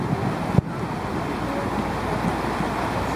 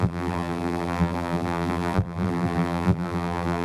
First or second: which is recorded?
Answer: first